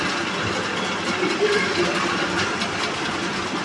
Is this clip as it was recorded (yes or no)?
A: yes